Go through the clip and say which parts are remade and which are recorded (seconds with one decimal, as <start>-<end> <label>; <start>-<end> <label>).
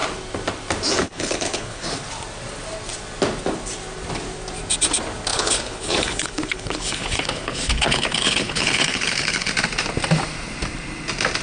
0.0-1.0 recorded; 1.0-1.9 remade; 1.9-5.3 recorded; 5.3-9.5 remade; 9.5-11.4 recorded